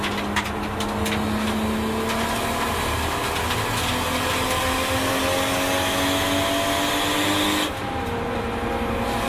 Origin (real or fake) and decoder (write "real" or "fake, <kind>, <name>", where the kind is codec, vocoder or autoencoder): real